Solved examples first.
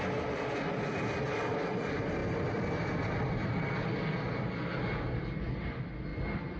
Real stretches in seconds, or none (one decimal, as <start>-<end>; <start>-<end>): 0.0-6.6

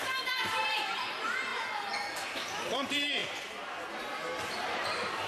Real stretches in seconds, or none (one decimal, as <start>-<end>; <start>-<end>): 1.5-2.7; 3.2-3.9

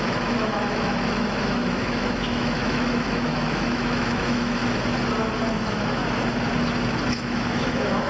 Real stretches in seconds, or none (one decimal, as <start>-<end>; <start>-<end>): 4.6-5.5; 6.0-7.1

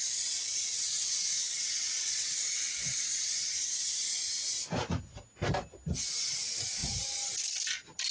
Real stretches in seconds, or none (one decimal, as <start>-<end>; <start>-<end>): 0.0-0.4; 3.5-8.1

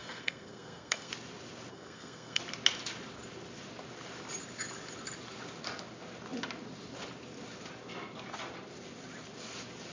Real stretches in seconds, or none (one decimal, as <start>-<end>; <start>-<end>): 1.1-1.7; 2.4-9.9

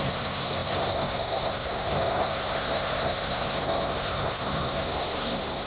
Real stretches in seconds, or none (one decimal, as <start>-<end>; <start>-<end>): none